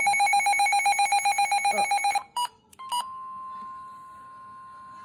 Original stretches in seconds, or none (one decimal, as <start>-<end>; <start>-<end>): 0.0-5.0